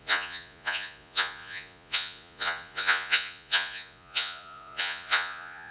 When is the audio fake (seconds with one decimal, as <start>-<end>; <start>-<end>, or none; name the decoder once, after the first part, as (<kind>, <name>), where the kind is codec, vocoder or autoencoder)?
0.0-5.7 (vocoder, Vocos)